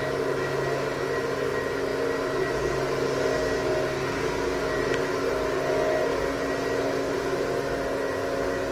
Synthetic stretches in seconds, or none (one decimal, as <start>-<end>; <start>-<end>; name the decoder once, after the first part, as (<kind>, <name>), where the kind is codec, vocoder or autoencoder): none